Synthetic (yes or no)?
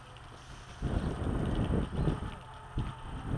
no